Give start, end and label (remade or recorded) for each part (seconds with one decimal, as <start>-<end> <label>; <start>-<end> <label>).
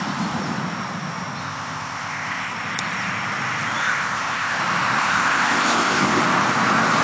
0.0-1.4 recorded; 1.4-2.5 remade; 2.5-3.8 recorded; 3.8-4.6 remade; 4.6-5.0 recorded; 5.0-6.2 remade; 6.2-7.0 recorded